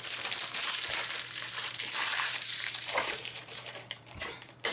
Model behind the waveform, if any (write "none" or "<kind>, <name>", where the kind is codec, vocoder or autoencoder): vocoder, BigVGAN v2